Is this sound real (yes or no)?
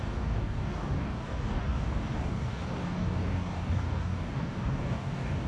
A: no